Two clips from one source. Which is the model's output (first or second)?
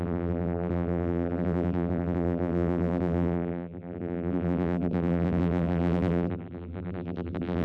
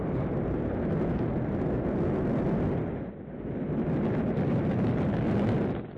first